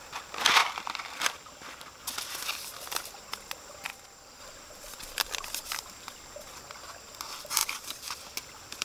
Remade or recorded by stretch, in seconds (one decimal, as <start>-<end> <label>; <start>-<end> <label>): 0.0-0.6 recorded; 0.6-2.0 remade; 2.0-3.9 recorded; 3.9-4.4 remade; 4.4-7.6 recorded; 7.6-8.4 remade; 8.4-8.8 recorded